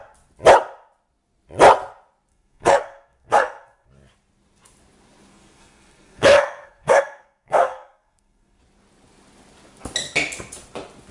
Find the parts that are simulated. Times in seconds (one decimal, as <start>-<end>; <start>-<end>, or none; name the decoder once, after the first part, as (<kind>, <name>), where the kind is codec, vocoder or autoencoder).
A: 2.3-3.9 (codec, SNAC); 5.3-8.6